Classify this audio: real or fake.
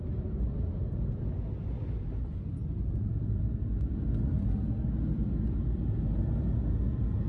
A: real